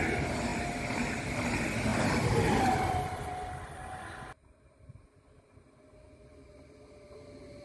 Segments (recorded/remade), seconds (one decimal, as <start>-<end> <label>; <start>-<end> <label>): 0.0-0.5 recorded; 0.5-1.3 remade; 1.3-1.9 recorded; 1.9-3.5 remade; 3.5-7.6 recorded